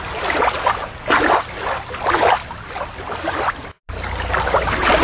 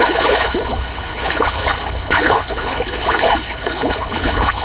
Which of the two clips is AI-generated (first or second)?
second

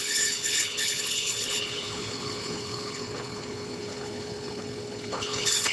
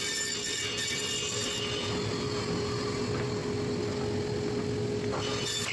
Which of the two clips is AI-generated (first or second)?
first